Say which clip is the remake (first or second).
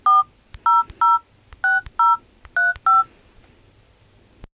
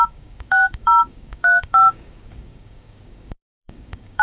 second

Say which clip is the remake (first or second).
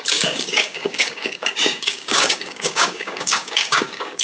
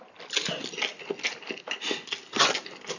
first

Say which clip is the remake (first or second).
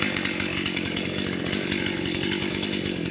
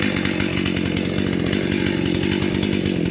first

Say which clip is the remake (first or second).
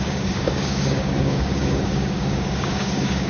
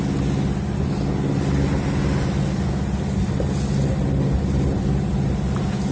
first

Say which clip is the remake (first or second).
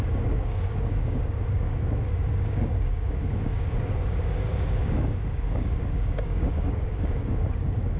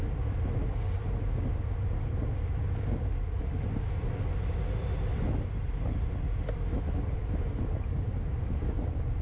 first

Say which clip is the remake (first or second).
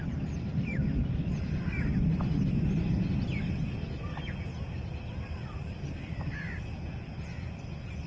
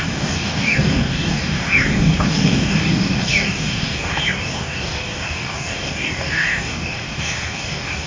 second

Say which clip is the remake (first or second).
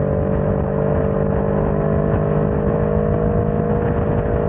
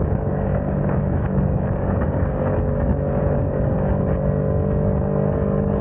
second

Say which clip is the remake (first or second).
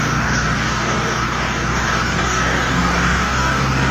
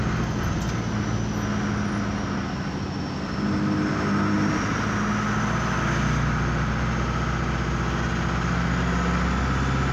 first